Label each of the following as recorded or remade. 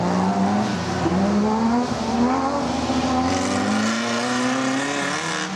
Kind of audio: recorded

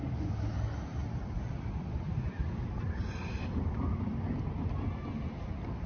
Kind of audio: recorded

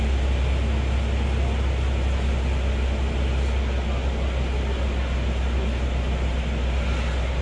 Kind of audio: recorded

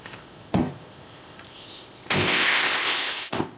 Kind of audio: remade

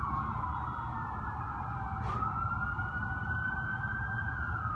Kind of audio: recorded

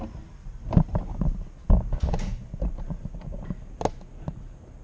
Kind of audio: recorded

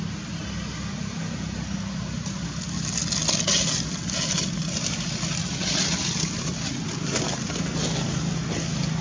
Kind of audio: recorded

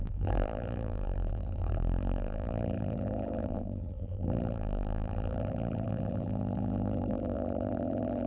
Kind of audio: remade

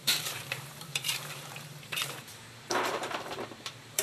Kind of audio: remade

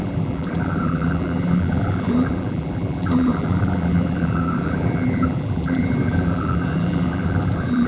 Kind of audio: remade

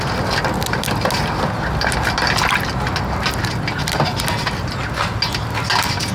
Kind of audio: recorded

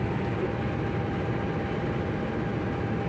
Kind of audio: recorded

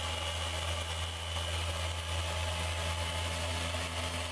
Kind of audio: recorded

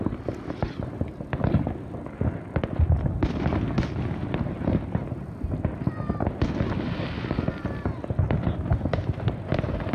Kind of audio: recorded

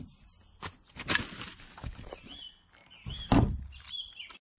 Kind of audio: recorded